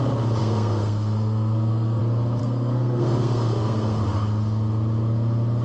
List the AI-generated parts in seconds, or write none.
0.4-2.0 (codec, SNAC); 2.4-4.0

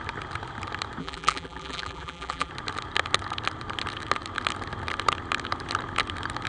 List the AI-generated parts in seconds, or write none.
1.0-2.5 (vocoder, BigVGAN v2)

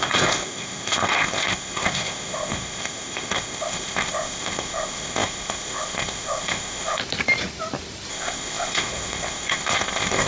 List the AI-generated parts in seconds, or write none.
0.0-7.0 (codec, ZipCodec); 8.1-10.3

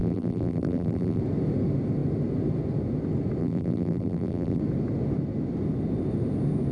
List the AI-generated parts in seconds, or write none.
0.0-1.2 (vocoder, BigVGAN v2); 3.4-4.6

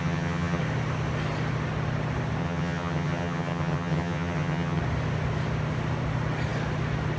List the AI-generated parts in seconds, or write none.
0.0-0.6 (vocoder, HiFi-GAN); 2.4-4.8

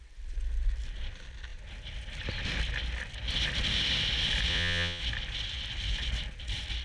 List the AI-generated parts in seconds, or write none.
4.5-5.0 (vocoder, Vocos)